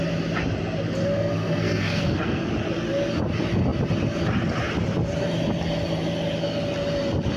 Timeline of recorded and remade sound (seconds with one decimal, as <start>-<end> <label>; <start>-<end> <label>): 0.0-1.0 recorded; 1.0-2.5 remade; 2.5-7.4 recorded